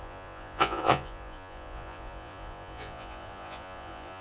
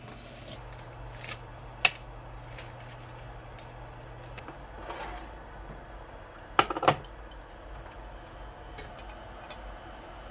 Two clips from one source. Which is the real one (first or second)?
second